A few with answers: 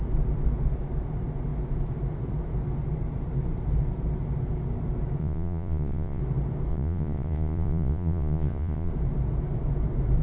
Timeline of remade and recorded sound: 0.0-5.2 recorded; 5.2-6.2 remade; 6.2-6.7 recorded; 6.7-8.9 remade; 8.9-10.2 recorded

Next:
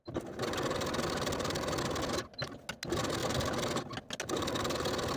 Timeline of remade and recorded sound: 0.0-5.2 recorded

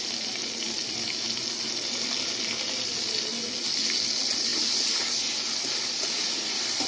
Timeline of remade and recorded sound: 0.0-6.9 recorded